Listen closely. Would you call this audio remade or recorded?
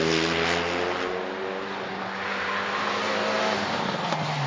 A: recorded